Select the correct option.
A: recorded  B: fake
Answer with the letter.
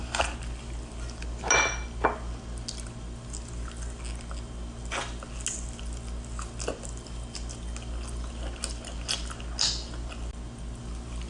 A